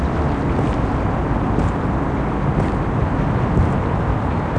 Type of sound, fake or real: real